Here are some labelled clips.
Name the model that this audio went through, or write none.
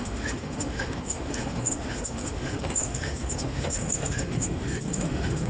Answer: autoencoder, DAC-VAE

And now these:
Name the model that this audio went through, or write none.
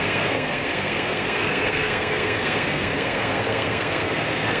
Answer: codec, SNAC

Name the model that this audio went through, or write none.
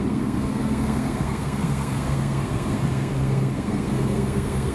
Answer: codec, SNAC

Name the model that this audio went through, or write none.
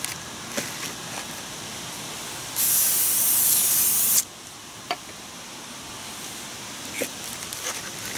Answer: none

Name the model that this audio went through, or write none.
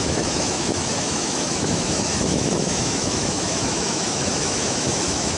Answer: autoencoder, DAC-VAE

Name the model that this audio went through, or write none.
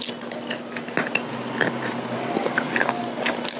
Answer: none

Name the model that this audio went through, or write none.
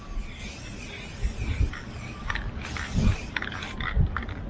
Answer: none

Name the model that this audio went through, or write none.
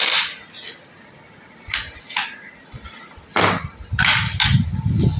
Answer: none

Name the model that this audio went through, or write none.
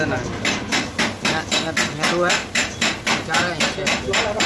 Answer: none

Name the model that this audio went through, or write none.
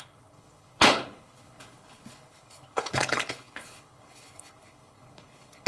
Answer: codec, HILCodec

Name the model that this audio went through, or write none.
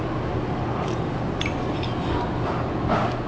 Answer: none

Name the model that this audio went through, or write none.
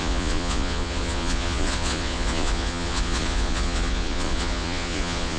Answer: vocoder, Vocos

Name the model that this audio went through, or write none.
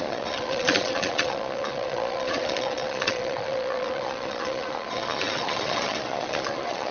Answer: vocoder, Vocos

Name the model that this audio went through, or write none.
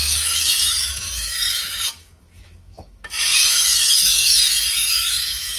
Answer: autoencoder, DAC-VAE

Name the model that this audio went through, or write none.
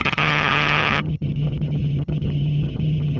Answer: vocoder, HiFi-GAN